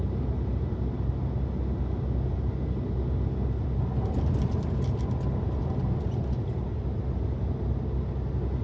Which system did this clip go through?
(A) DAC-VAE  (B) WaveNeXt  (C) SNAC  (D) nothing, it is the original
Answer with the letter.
D